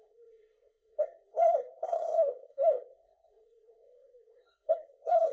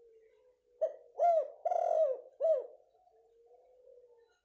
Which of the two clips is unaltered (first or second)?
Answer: second